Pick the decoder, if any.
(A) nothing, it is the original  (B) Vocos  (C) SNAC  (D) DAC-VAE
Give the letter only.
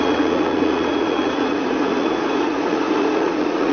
B